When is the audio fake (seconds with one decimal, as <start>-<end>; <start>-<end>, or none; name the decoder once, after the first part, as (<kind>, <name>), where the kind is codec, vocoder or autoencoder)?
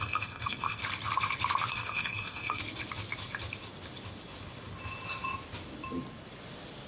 0.0-0.8 (codec, SNAC); 1.7-2.6